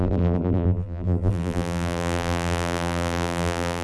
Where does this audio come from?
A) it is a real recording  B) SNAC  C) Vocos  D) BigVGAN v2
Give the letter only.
D